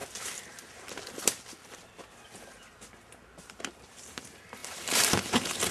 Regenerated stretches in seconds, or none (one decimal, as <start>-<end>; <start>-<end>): 3.4-5.7

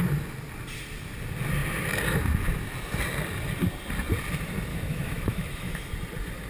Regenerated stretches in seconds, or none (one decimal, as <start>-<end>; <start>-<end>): 4.7-5.9

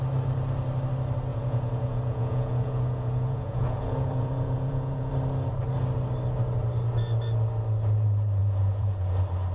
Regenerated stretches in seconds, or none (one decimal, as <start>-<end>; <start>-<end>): 1.3-5.1; 8.4-9.1